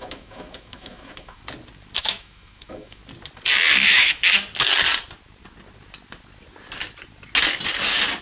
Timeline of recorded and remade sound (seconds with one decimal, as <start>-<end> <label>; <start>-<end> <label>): 0.0-1.4 remade; 1.4-2.0 recorded; 2.0-3.0 remade; 3.0-3.7 recorded; 3.7-4.3 remade; 4.3-8.2 recorded